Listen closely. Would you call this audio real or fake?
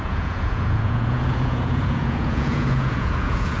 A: fake